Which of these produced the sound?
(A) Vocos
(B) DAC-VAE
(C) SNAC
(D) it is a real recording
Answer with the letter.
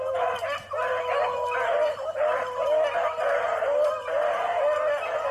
D